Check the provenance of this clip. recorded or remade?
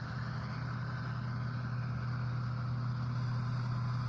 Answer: recorded